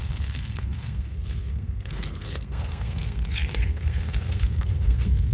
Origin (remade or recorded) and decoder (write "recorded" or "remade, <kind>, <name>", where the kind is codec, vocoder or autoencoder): remade, codec, SNAC